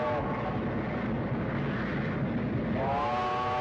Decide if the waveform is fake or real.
real